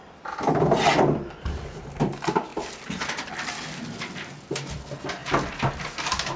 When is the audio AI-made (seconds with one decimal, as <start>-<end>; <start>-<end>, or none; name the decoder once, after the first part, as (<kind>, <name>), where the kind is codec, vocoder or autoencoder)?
none